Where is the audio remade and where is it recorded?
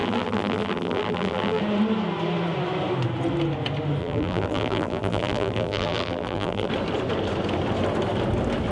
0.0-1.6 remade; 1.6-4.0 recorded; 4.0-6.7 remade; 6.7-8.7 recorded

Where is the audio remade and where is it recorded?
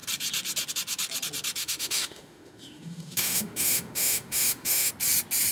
0.0-1.6 recorded; 1.6-4.9 remade; 4.9-5.5 recorded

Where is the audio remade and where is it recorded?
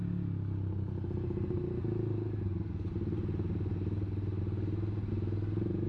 0.0-5.9 recorded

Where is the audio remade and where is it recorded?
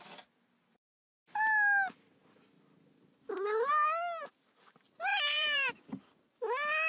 0.0-5.1 recorded; 5.1-5.7 remade; 5.7-6.9 recorded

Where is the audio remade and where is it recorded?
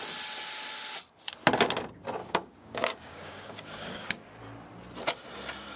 0.0-2.2 recorded; 2.2-4.4 remade; 4.4-5.8 recorded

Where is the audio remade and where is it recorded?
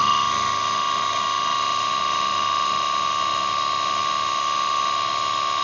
0.0-5.6 remade